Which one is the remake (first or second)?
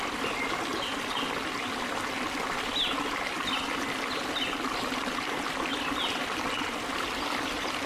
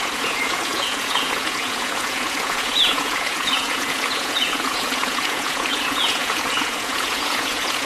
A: second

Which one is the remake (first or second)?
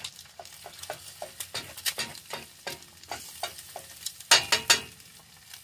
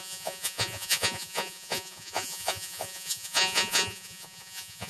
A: second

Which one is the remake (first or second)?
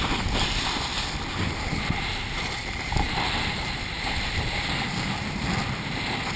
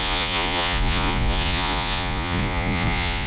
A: second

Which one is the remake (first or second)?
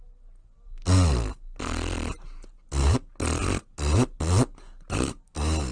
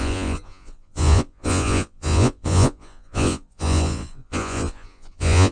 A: second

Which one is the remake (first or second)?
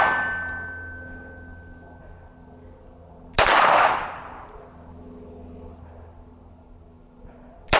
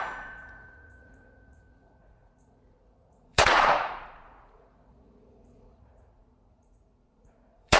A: second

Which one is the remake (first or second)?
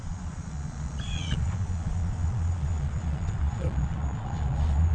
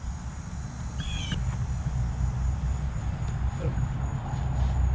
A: first